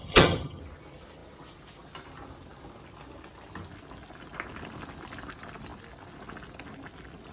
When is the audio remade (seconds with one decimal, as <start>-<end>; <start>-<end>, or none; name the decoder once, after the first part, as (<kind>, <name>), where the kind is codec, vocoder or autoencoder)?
0.0-0.6 (vocoder, HiFi-GAN)